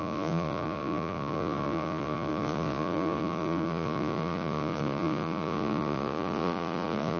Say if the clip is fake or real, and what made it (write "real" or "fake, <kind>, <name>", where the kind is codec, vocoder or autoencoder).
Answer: fake, vocoder, Vocos